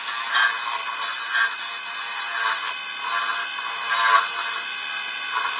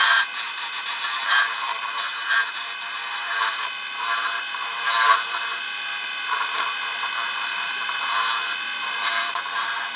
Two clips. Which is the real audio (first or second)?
first